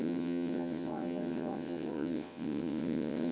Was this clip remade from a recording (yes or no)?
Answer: yes